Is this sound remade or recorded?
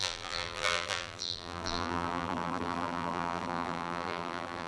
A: remade